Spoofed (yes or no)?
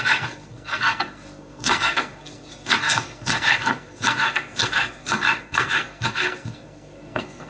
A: yes